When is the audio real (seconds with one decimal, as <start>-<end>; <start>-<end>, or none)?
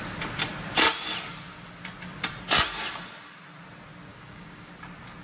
0.0-4.1; 4.7-5.2